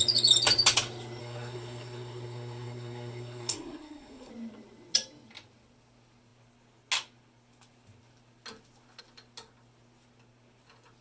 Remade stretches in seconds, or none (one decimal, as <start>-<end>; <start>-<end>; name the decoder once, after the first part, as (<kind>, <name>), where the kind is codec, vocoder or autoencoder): 1.2-4.3 (codec, SNAC)